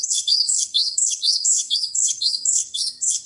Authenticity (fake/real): fake